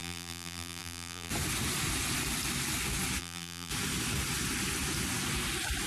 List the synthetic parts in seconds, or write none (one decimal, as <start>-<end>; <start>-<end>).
0.0-1.3; 3.2-3.7